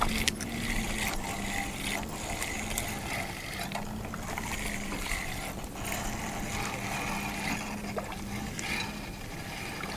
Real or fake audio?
real